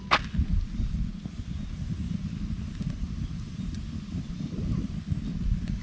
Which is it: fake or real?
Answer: real